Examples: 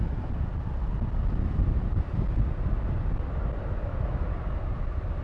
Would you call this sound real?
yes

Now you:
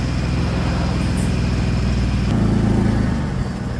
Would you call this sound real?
yes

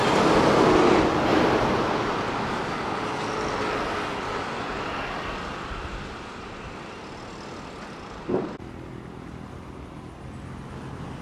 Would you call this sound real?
yes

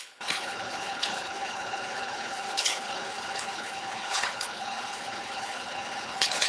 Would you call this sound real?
no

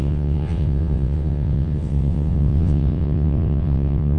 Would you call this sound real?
no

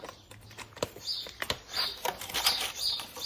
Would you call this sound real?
yes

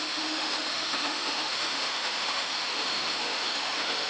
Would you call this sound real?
no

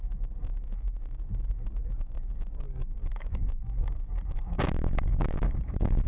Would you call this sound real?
no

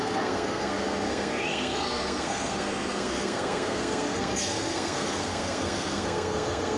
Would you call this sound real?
no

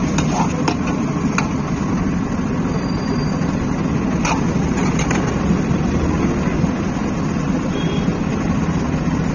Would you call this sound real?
yes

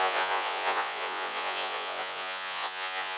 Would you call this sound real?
no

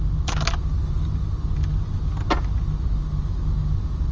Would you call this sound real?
yes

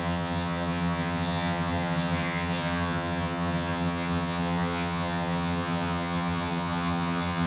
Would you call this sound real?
no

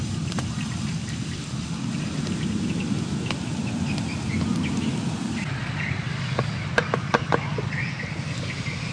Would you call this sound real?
no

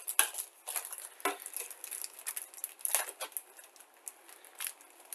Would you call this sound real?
yes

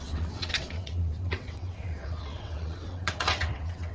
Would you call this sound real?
no